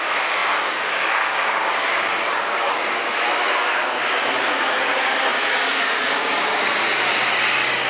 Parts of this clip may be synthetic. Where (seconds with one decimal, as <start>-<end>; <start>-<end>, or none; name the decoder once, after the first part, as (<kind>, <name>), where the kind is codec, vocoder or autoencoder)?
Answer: 0.0-7.9 (codec, DAC)